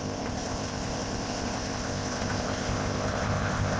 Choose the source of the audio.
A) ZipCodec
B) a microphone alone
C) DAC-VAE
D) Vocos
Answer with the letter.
A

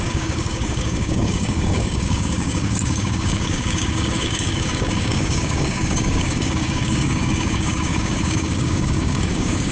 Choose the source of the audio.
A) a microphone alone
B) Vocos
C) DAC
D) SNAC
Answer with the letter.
C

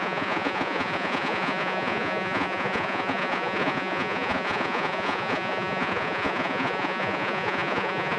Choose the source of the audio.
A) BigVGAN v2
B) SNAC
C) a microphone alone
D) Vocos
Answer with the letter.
D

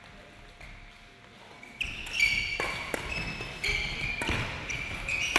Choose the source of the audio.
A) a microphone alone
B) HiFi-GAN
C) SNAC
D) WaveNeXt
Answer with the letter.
A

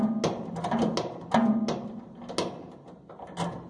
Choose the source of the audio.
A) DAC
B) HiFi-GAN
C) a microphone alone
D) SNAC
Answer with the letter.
C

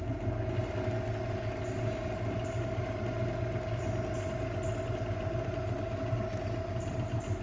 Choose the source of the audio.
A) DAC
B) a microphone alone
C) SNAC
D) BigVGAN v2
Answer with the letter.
B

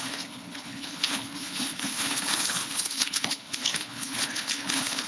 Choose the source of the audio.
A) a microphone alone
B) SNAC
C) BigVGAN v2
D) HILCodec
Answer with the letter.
D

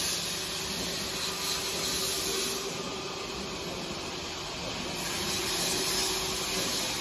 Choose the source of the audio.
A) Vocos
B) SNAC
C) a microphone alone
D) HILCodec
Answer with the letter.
C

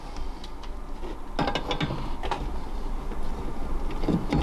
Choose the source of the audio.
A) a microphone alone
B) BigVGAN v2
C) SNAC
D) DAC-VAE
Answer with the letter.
A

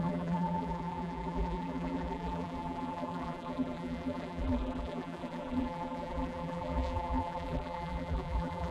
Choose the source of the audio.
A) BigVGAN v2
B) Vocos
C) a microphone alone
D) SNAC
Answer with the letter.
A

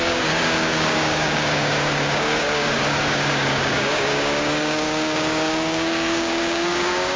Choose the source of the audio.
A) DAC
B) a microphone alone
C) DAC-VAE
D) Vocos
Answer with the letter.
A